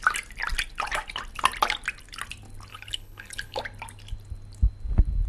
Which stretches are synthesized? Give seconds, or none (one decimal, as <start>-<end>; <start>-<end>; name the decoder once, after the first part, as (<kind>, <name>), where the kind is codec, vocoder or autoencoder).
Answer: 2.7-3.6 (codec, HILCodec)